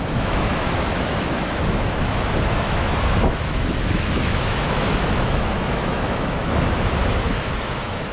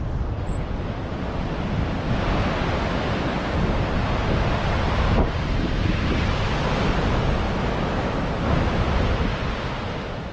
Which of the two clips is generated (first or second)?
first